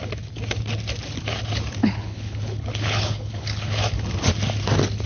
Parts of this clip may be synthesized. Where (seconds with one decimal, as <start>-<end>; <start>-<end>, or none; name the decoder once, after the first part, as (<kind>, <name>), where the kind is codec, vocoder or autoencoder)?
1.8-3.8 (codec, HILCodec)